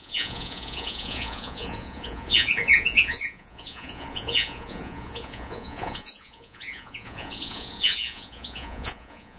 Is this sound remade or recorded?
remade